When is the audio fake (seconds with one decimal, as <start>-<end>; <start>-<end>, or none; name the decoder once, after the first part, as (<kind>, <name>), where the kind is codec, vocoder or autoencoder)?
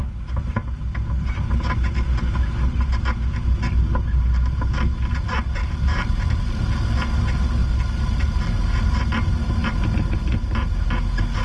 5.6-6.6 (vocoder, BigVGAN v2); 7.6-8.6